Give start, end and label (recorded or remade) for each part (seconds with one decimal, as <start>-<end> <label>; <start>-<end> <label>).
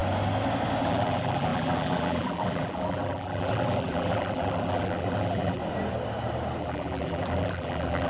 0.0-0.8 recorded; 0.8-5.6 remade; 5.6-6.6 recorded; 6.6-8.1 remade